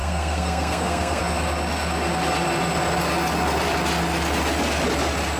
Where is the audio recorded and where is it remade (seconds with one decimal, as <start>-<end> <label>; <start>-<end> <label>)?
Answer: 0.0-1.2 remade; 1.2-5.4 recorded